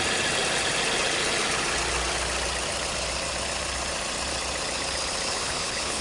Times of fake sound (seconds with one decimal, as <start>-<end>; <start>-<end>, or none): 5.3-6.0